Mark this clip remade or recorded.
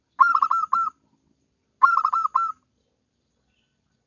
recorded